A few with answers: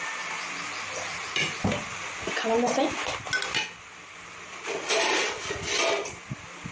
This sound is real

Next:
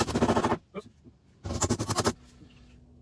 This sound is real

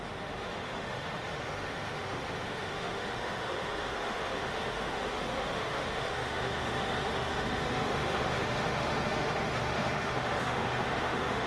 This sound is fake